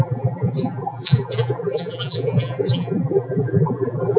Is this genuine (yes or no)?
no